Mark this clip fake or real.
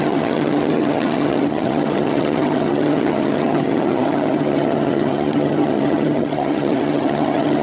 fake